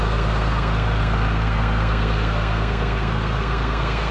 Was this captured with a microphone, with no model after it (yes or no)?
no